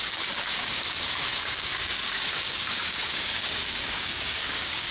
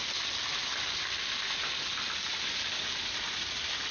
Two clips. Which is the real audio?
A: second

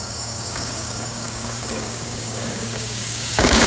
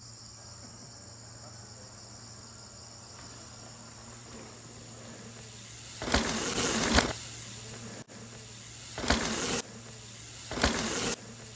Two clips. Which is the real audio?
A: second